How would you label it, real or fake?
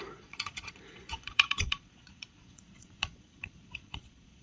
fake